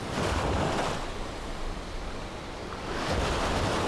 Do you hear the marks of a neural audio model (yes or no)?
no